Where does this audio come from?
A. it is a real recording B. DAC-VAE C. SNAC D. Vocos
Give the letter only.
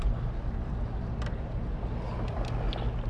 A